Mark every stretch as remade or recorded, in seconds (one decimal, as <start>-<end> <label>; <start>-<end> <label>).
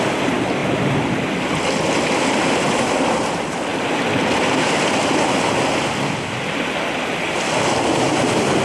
0.0-8.6 recorded